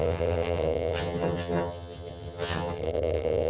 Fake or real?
fake